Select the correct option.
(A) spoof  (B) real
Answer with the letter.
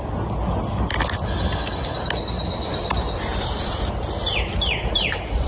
B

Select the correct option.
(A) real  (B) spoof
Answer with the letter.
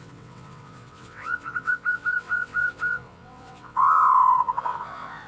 B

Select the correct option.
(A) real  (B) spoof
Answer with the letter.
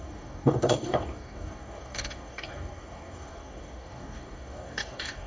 B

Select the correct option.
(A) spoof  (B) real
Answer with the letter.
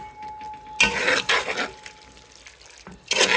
B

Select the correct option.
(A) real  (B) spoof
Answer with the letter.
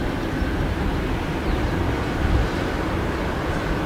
A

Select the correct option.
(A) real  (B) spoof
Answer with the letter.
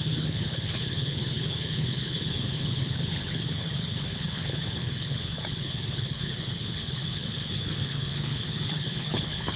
B